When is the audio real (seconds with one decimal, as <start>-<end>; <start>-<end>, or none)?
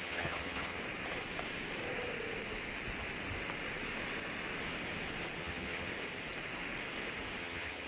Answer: 0.8-5.4; 5.9-7.4